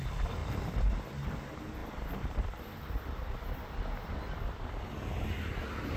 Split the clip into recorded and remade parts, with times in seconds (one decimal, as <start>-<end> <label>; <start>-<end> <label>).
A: 0.0-0.4 recorded; 0.4-1.3 remade; 1.3-6.0 recorded